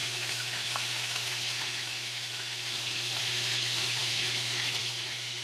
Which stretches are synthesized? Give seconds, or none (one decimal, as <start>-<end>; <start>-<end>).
0.0-5.4